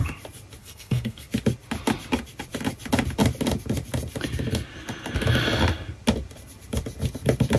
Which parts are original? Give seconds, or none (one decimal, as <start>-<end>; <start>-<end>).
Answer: 0.0-0.6; 1.3-7.6